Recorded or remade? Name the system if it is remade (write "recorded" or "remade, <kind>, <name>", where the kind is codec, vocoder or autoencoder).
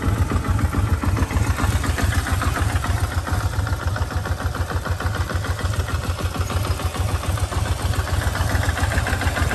recorded